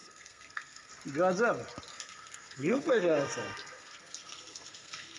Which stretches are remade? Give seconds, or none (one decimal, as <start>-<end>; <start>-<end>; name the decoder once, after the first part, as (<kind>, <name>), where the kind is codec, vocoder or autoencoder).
0.0-0.9 (codec, SNAC); 1.9-5.2